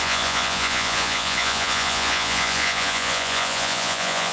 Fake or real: fake